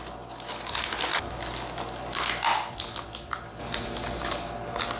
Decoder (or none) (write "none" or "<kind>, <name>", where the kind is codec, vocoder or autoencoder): none